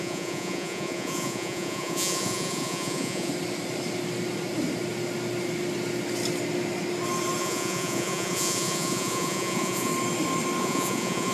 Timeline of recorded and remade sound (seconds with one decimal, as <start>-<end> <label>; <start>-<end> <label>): 0.0-3.3 remade; 3.3-7.4 recorded; 7.4-9.9 remade; 9.9-10.6 recorded; 10.6-11.3 remade